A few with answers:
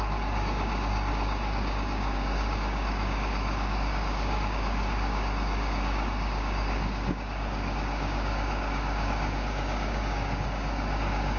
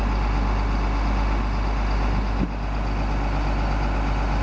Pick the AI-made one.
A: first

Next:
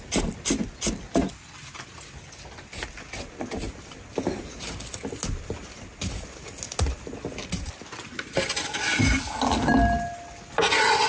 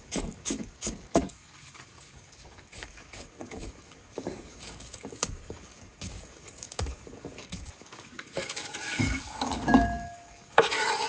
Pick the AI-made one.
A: second